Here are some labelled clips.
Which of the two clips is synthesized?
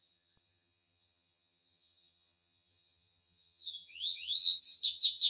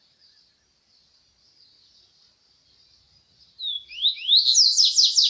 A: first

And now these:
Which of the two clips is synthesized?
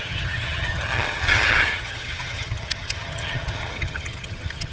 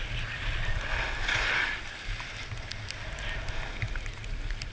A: first